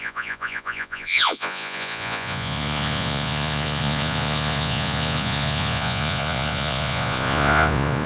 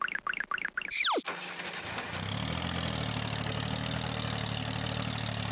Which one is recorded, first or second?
second